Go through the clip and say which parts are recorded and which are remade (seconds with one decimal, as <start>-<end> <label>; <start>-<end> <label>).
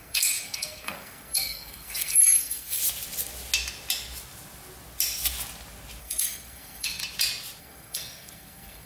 0.0-2.8 remade; 2.8-6.0 recorded; 6.0-7.0 remade; 7.0-7.6 recorded; 7.6-8.9 remade